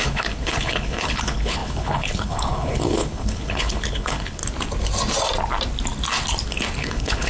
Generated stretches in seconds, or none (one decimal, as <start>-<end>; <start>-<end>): 0.0-4.4; 6.8-7.3